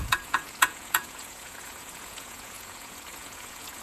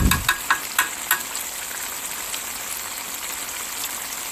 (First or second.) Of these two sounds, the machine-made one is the first